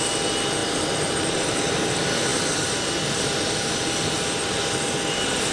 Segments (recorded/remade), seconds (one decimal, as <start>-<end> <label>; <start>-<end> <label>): 0.0-2.3 recorded; 2.3-3.2 remade; 3.2-5.5 recorded